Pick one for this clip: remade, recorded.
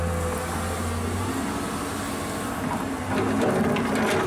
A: recorded